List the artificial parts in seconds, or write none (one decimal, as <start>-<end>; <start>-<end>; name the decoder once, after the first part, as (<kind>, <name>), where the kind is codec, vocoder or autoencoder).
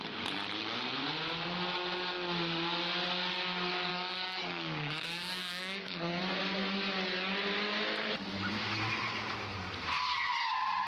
3.9-6.2 (codec, DAC)